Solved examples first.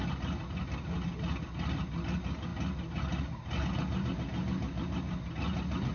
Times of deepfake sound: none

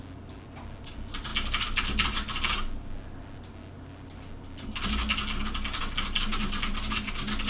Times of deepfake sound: none

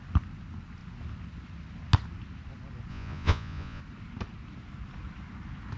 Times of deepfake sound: 2.9-3.8

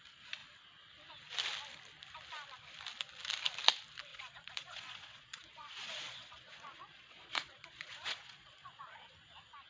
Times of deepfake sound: 4.1-9.1